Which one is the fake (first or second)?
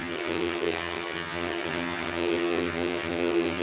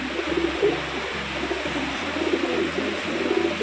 first